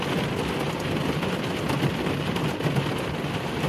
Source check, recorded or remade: recorded